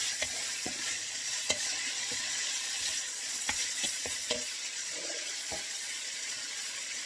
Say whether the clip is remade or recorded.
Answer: remade